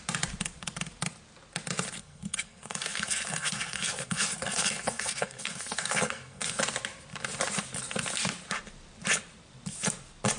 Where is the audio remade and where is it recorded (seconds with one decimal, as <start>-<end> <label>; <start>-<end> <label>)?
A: 0.0-2.0 recorded; 2.0-6.6 remade; 6.6-10.4 recorded